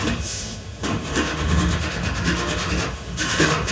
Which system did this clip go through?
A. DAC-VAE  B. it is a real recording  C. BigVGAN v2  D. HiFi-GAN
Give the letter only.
A